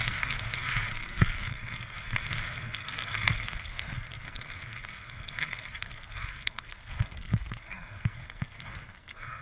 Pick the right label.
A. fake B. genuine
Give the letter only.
A